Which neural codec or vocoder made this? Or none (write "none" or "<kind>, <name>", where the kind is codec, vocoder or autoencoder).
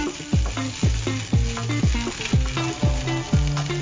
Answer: none